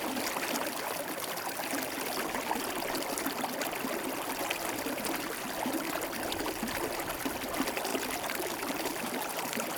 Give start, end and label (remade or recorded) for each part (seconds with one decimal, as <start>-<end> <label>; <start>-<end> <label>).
0.0-7.9 recorded; 7.9-9.8 remade